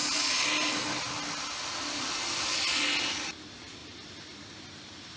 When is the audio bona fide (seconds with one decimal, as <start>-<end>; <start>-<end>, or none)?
0.0-5.2